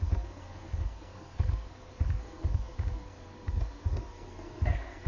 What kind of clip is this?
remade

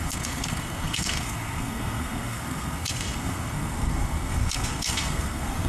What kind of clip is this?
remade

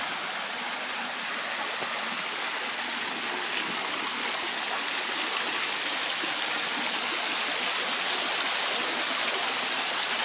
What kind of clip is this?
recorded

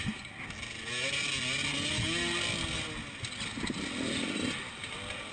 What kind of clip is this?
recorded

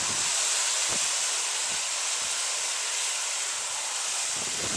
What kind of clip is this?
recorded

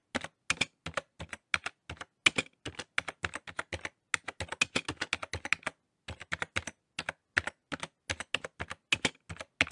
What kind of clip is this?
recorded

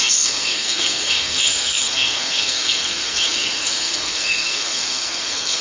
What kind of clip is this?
remade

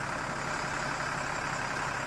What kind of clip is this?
recorded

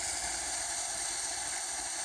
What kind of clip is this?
recorded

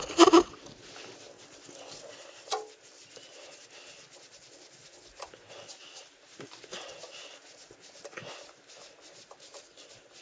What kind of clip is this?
recorded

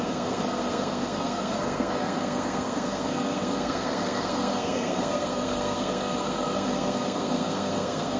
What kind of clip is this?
remade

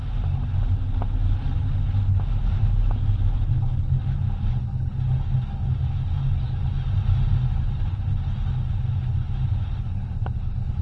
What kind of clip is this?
recorded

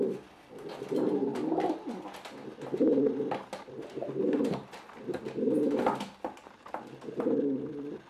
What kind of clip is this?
recorded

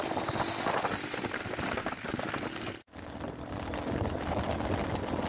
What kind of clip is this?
recorded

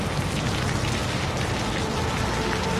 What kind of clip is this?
recorded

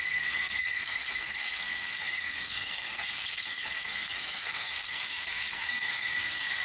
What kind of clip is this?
remade